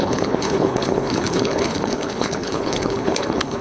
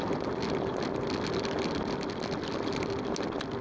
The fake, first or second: first